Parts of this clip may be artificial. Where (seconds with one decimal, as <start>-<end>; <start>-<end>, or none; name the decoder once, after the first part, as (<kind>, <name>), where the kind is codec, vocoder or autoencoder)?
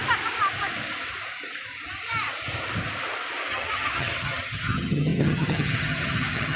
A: 3.5-6.6 (vocoder, HiFi-GAN)